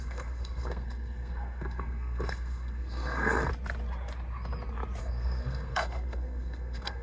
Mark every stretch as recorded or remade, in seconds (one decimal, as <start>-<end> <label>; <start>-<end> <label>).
0.0-3.5 remade; 3.5-5.0 recorded; 5.0-7.0 remade